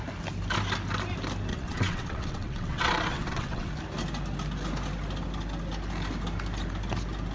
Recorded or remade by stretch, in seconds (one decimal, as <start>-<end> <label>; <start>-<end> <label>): 0.0-1.5 recorded; 1.5-3.7 remade; 3.7-7.3 recorded